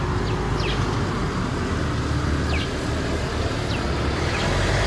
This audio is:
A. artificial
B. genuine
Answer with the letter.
B